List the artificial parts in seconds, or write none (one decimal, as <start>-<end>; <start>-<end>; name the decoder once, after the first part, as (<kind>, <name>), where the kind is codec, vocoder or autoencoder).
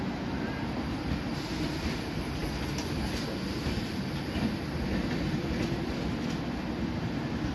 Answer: none